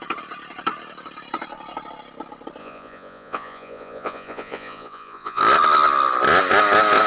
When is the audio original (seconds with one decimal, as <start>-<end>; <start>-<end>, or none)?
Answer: 0.0-2.6; 5.4-7.1